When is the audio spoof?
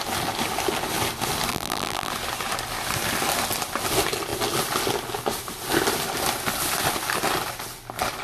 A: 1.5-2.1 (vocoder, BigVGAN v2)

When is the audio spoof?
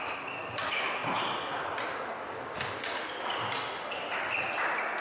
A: none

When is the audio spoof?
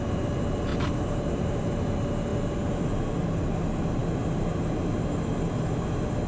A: 0.7-1.6 (vocoder, BigVGAN v2)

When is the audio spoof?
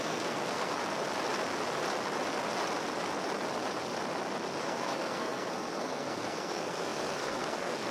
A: 0.0-0.8 (codec, SNAC); 4.6-7.9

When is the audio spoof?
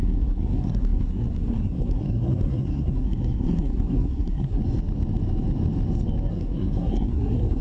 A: 0.0-4.6 (codec, SNAC); 6.3-7.6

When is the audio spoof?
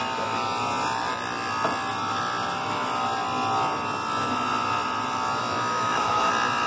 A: 5.4-6.3 (autoencoder, DAC-VAE)